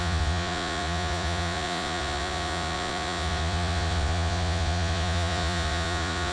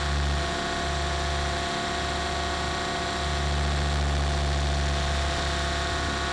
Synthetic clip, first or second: first